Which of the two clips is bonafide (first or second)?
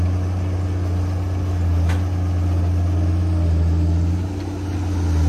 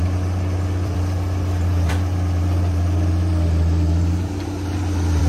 first